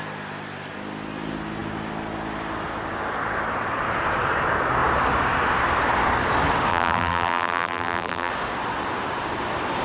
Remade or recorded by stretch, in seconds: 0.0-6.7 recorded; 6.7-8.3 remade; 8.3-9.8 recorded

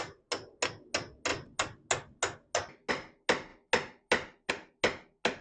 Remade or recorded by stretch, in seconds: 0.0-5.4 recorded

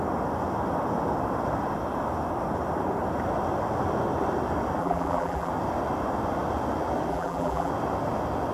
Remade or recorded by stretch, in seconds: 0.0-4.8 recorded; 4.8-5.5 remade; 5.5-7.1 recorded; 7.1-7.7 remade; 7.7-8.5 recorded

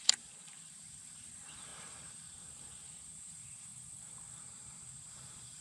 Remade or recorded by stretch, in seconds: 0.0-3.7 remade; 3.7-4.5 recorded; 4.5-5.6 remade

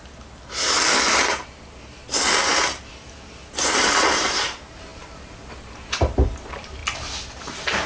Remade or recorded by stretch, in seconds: 0.0-3.5 recorded; 3.5-6.8 remade; 6.8-7.4 recorded; 7.4-7.9 remade

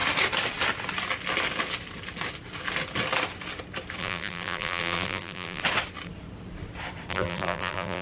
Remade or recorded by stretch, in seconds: 0.0-4.0 recorded; 4.0-5.6 remade; 5.6-7.1 recorded; 7.1-8.0 remade